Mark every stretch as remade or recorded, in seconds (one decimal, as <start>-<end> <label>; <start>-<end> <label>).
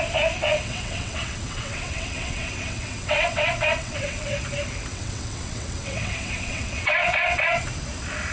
0.0-0.4 recorded; 0.4-4.4 remade; 4.4-4.9 recorded; 4.9-7.7 remade; 7.7-8.3 recorded